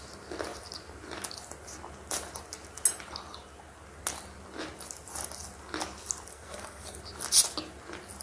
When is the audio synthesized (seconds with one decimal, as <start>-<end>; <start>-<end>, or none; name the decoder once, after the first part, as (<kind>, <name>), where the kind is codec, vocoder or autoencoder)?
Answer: 6.3-7.0 (codec, SNAC)